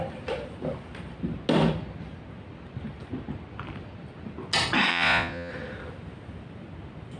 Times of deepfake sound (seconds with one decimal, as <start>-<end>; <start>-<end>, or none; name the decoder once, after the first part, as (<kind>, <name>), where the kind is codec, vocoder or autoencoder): 4.9-5.5 (vocoder, Vocos)